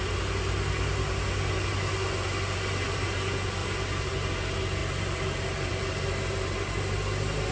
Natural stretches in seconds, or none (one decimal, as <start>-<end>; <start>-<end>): 0.0-3.6; 4.3-4.8; 6.1-7.5